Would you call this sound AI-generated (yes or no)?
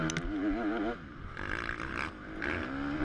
no